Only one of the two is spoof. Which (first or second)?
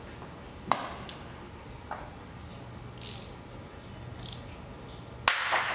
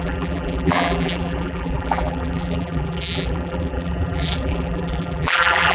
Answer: second